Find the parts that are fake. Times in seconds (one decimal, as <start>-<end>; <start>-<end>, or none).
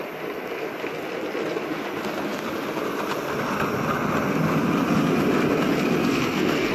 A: 6.0-6.7